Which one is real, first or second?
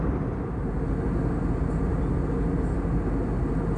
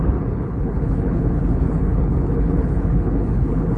first